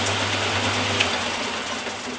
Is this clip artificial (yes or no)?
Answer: no